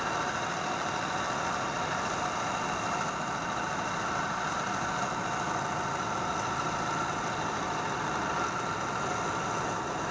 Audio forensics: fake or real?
real